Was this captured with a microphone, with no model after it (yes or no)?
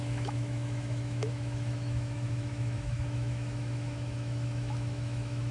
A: no